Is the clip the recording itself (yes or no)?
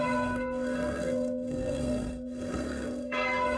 no